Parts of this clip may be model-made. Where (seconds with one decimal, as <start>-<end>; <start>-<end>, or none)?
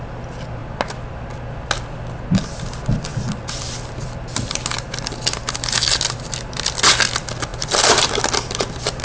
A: none